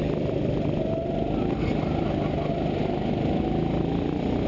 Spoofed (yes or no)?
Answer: no